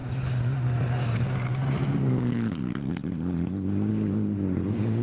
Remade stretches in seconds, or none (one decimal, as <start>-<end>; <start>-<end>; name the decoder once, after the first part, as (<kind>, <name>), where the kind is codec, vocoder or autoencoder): 3.9-5.0 (codec, DAC)